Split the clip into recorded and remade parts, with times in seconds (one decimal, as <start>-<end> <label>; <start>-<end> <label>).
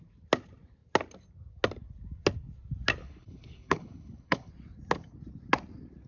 0.0-3.0 recorded; 3.0-4.5 remade; 4.5-6.1 recorded